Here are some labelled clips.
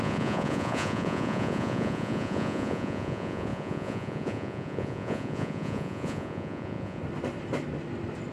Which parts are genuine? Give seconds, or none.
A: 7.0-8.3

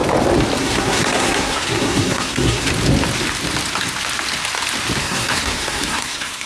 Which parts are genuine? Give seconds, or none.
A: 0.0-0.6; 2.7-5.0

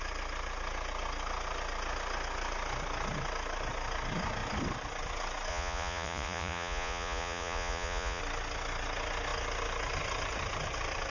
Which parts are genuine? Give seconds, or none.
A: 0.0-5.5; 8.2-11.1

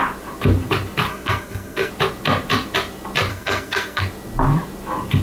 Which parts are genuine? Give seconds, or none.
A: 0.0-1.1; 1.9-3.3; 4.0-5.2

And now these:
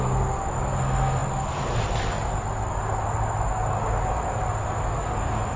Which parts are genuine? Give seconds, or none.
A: 0.0-5.6

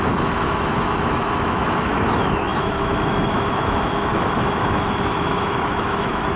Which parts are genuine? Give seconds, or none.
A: none